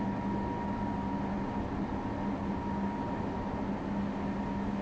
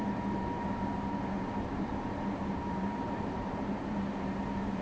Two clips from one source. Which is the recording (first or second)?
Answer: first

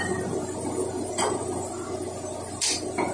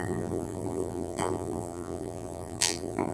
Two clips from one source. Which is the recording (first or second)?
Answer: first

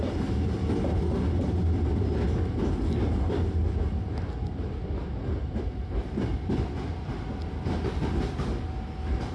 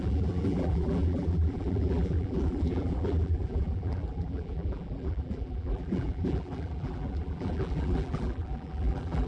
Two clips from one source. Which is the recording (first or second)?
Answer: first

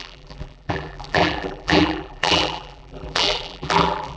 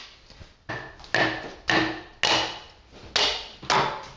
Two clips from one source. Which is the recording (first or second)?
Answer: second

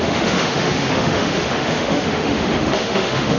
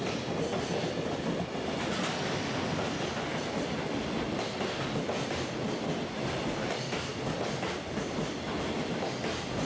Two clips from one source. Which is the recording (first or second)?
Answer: second